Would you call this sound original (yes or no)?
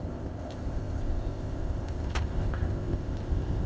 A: no